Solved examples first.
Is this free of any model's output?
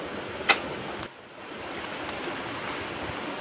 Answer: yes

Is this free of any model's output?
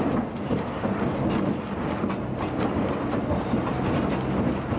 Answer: yes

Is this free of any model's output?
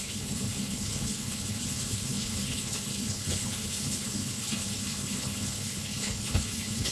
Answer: no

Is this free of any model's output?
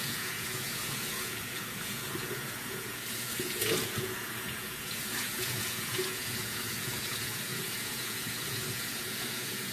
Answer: no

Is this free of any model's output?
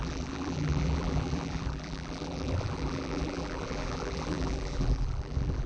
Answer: no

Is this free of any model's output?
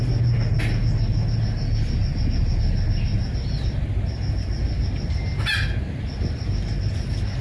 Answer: yes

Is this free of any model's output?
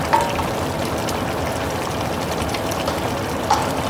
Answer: yes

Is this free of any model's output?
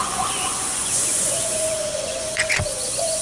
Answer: no